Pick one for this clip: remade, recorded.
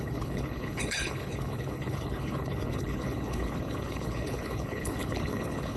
remade